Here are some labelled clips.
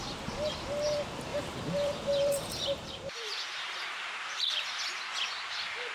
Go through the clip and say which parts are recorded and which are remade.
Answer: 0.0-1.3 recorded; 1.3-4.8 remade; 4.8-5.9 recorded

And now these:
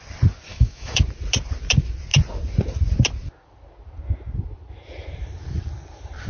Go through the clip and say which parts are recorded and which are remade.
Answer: 0.0-0.5 recorded; 0.5-1.0 remade; 1.0-6.3 recorded